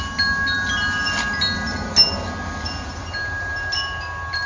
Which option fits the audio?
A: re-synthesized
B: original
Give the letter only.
B